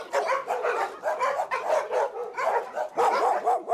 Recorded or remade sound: recorded